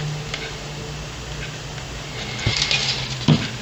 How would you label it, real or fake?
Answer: real